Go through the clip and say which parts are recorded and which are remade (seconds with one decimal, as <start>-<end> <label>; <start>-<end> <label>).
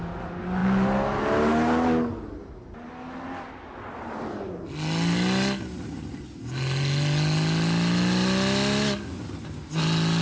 0.0-10.2 recorded